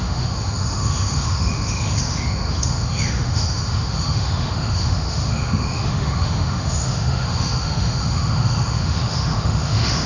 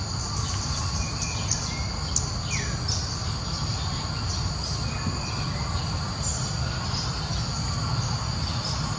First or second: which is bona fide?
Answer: second